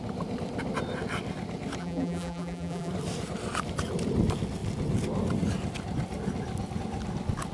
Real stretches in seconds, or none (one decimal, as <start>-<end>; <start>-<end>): 0.0-1.8; 2.9-7.5